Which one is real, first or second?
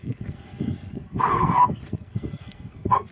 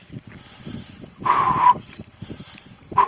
second